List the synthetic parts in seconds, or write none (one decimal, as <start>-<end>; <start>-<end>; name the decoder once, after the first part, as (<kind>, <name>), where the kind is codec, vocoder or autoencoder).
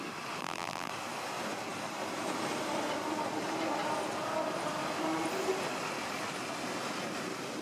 0.4-0.9 (vocoder, BigVGAN v2)